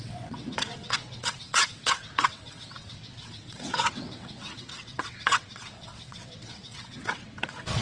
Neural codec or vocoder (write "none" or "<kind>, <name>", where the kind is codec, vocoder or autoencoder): vocoder, WaveNeXt